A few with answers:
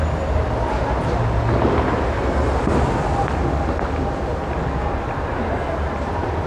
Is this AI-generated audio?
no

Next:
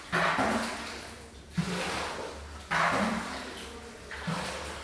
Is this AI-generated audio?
no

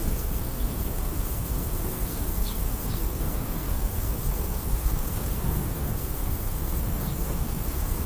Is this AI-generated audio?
yes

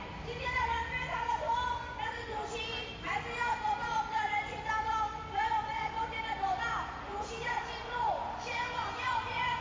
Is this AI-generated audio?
no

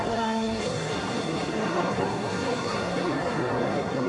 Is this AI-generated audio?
yes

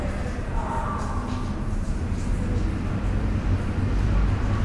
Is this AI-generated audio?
no